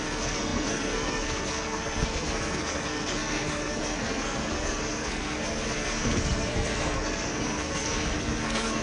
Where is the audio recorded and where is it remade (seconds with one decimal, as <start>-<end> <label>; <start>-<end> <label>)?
0.0-8.8 remade